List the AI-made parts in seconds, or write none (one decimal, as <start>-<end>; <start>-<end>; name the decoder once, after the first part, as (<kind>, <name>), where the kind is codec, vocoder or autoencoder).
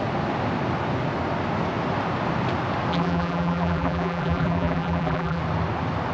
2.9-5.4 (vocoder, BigVGAN v2)